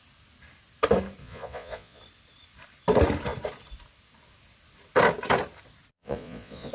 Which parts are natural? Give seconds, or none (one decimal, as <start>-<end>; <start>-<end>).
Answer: 0.0-1.2; 2.0-5.9